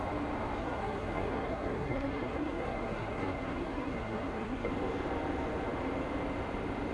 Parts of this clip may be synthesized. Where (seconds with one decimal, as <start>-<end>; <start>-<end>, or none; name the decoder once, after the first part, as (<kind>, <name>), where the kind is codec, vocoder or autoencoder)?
0.6-4.7 (codec, SNAC)